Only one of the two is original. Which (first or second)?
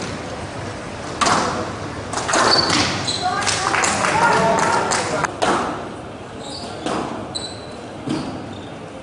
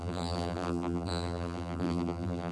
first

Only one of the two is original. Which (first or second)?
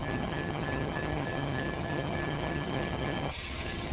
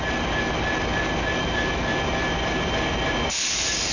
second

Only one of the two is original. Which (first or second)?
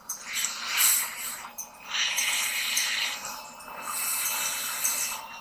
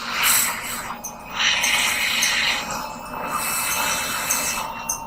second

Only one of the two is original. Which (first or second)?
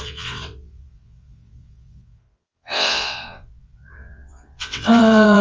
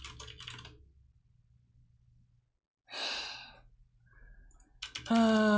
second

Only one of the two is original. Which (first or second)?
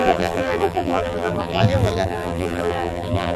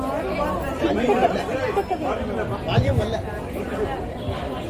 second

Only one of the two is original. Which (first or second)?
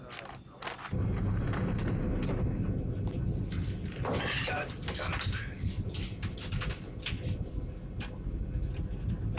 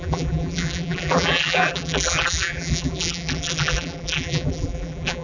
first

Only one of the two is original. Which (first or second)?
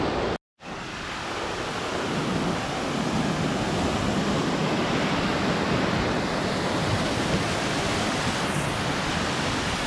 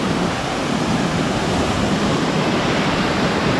first